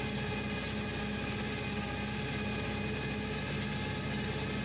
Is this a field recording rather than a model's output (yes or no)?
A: yes